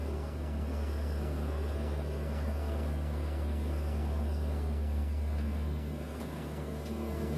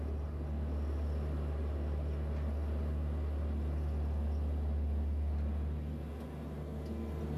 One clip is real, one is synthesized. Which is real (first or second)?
second